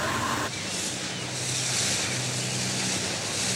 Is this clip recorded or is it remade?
recorded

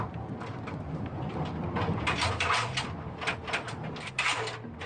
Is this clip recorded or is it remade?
recorded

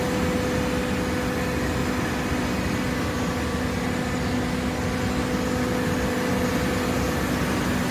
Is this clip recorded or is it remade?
recorded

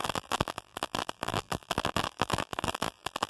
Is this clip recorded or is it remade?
remade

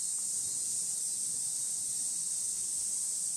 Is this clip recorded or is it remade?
remade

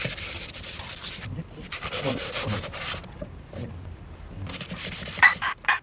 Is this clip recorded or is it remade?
remade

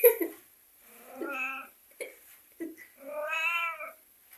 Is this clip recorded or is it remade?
remade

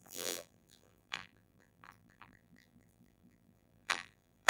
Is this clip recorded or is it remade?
remade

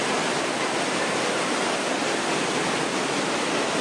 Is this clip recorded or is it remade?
recorded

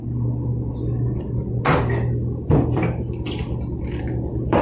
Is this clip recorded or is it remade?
recorded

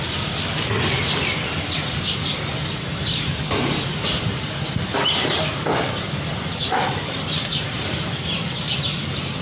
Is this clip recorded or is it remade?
remade